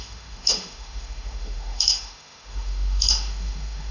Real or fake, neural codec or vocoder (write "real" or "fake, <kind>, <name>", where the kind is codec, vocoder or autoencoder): fake, autoencoder, DAC-VAE